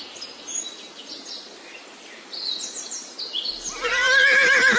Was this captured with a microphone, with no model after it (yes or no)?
yes